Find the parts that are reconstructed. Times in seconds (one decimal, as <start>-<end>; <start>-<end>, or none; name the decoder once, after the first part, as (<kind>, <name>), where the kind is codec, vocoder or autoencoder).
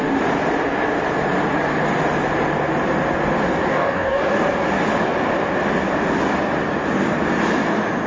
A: 3.7-4.4 (codec, DAC)